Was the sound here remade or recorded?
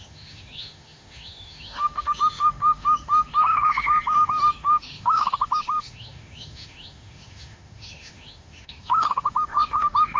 remade